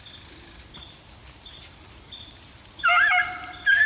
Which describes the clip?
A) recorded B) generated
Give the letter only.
A